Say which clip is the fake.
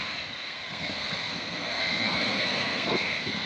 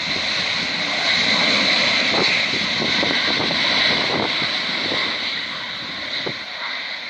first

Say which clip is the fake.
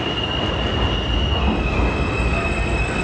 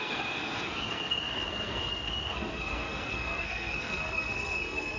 second